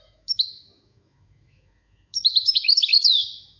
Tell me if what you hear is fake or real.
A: fake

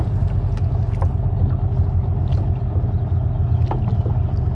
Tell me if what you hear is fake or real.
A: real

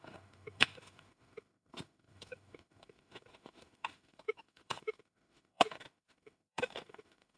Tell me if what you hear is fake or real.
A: fake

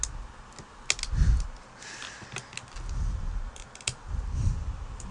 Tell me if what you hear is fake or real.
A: real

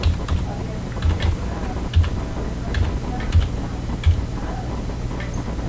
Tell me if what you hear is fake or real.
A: real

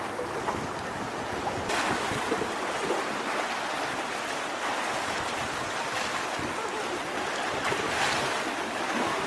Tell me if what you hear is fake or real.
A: real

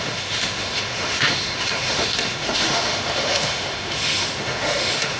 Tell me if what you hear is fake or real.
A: fake